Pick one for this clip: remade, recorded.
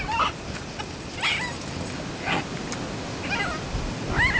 recorded